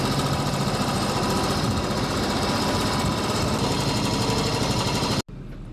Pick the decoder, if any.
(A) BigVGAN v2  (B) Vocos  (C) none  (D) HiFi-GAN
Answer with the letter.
C